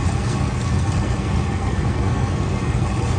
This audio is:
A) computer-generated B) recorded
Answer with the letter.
A